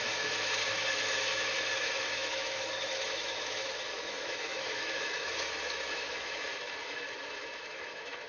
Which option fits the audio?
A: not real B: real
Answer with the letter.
A